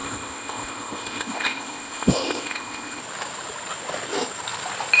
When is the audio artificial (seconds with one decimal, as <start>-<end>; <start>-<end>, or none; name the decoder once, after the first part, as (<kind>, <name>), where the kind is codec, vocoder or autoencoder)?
0.0-3.0 (codec, ZipCodec)